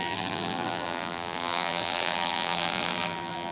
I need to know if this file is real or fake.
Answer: fake